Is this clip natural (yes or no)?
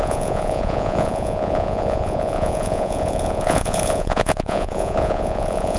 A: no